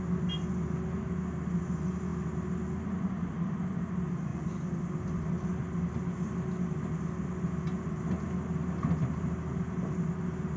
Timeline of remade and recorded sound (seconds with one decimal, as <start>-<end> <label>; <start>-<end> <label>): 0.0-4.3 recorded; 4.3-4.8 remade; 4.8-10.6 recorded